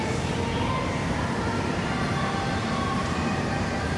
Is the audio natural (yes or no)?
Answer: no